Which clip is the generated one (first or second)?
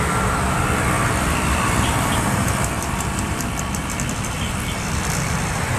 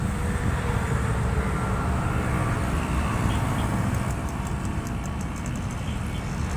first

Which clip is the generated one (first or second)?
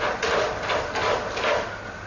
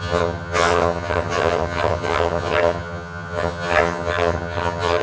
second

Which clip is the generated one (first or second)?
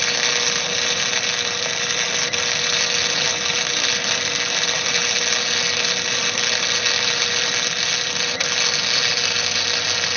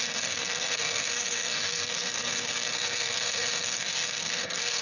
second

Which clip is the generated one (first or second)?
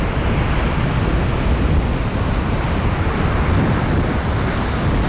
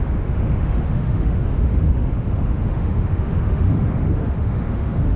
second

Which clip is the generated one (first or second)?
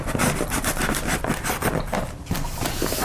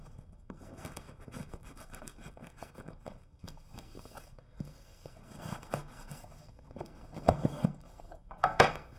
second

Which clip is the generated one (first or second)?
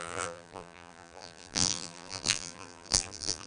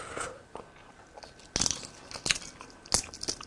first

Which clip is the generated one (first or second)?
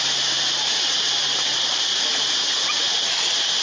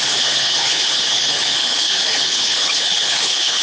second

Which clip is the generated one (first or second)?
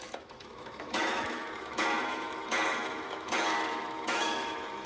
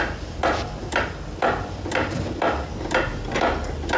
first